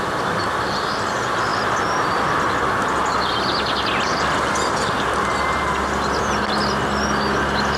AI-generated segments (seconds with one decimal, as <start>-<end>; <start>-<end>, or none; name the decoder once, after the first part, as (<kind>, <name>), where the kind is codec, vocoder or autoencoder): none